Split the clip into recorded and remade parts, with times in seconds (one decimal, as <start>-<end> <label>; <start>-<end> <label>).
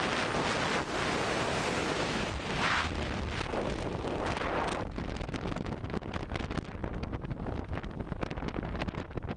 0.0-1.8 recorded; 1.8-2.3 remade; 2.3-6.8 recorded; 6.8-7.4 remade; 7.4-9.4 recorded